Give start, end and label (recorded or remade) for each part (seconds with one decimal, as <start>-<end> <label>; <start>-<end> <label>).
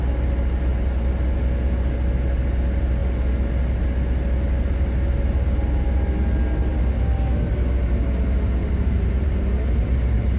0.0-8.6 recorded; 8.6-9.5 remade; 9.5-10.4 recorded